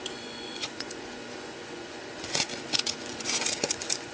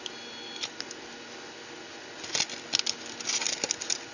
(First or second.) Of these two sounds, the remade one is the first